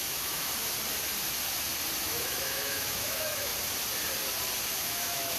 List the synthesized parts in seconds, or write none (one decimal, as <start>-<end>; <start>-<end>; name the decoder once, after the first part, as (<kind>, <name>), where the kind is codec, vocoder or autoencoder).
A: 0.0-0.5 (autoencoder, DAC-VAE); 2.0-3.5; 4.8-5.4

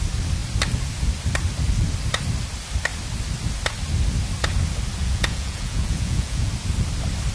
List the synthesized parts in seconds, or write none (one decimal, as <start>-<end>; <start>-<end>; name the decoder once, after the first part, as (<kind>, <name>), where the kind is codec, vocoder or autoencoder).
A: 5.0-6.5 (vocoder, Vocos)

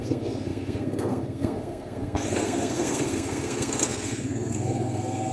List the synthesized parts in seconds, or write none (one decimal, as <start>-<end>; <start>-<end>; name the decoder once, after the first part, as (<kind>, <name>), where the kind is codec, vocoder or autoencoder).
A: 0.0-5.3 (codec, SNAC)

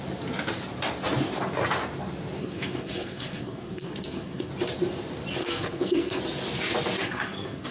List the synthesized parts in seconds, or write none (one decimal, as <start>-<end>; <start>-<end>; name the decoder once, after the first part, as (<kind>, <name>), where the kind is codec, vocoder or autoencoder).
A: 2.4-4.5 (codec, SNAC); 5.4-6.2; 7.0-7.7

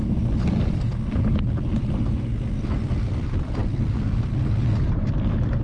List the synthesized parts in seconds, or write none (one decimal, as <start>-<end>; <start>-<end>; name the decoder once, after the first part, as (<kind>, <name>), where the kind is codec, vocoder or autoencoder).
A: none